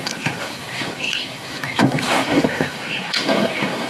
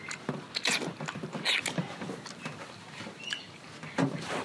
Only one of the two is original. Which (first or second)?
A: second